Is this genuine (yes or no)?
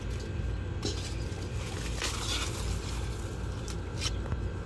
yes